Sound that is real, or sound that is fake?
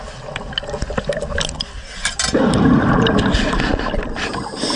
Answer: real